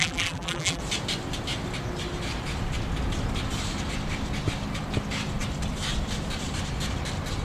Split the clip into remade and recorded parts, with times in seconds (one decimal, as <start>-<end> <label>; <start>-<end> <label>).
0.0-0.8 remade; 0.8-7.4 recorded

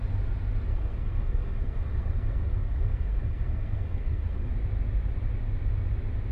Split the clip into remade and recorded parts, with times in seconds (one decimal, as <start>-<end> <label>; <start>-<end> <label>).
0.0-0.7 recorded; 0.7-4.5 remade; 4.5-6.3 recorded

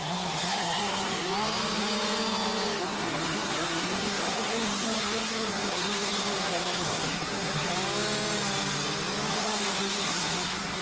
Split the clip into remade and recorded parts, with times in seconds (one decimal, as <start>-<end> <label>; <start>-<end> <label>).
0.0-1.1 remade; 1.1-2.8 recorded; 2.8-7.7 remade; 7.7-9.3 recorded; 9.3-10.8 remade

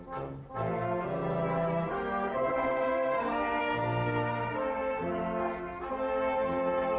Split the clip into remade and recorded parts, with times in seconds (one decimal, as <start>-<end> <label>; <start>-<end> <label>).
0.0-2.5 recorded; 2.5-3.6 remade; 3.6-7.0 recorded

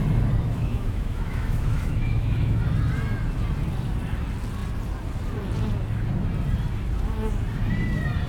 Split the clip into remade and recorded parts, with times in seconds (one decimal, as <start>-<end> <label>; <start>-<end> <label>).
0.0-0.4 recorded; 0.4-2.6 remade; 2.6-8.3 recorded

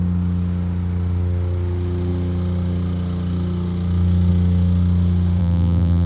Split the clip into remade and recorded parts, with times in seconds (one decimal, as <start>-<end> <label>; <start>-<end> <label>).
0.0-5.4 recorded; 5.4-6.1 remade